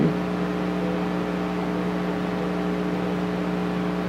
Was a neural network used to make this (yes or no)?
no